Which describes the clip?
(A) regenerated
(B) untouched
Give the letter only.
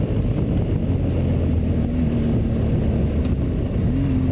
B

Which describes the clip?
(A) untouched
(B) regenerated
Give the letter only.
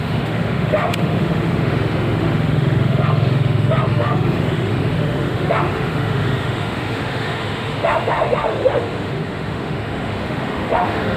B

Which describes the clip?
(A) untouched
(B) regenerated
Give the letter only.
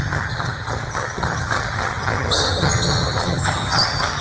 B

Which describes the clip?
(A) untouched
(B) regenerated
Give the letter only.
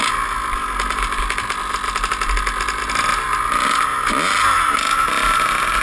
A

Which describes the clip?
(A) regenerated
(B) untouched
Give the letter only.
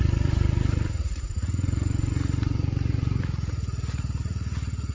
A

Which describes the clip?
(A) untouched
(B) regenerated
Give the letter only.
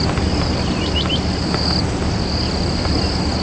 A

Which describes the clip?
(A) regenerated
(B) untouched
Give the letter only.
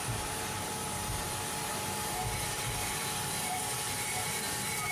A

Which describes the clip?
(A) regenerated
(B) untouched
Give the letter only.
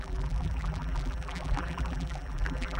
A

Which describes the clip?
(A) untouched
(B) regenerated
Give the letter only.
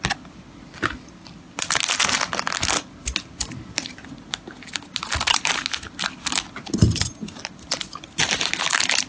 A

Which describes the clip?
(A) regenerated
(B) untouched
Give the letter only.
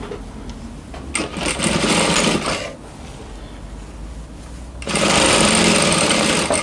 B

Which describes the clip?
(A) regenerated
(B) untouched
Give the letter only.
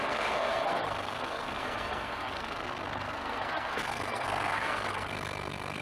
A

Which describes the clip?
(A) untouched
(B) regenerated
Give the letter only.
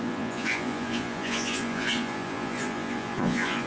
B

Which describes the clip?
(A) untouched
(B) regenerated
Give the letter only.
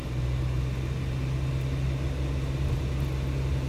A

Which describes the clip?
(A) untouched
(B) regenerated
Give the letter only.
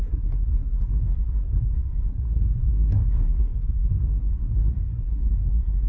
B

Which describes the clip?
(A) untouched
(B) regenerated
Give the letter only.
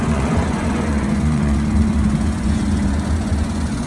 B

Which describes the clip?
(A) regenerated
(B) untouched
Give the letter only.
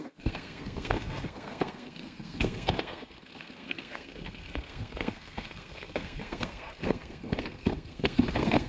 A